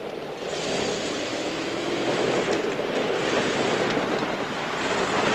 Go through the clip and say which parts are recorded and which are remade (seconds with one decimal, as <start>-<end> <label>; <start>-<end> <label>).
0.0-1.3 recorded; 1.3-2.4 remade; 2.4-5.3 recorded